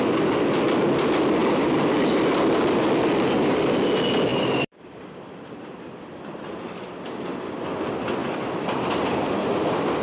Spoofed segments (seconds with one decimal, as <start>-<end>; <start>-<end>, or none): 1.4-3.1; 4.3-6.1; 8.2-9.3